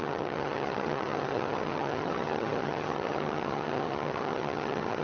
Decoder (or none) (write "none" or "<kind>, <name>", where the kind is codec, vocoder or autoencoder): vocoder, HiFi-GAN